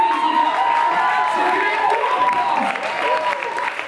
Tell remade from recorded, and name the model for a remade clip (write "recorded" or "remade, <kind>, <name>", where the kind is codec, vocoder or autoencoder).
recorded